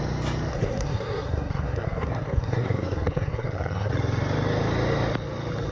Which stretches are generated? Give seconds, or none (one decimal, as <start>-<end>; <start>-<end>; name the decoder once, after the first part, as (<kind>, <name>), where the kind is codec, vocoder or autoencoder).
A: 0.5-3.9 (codec, SNAC)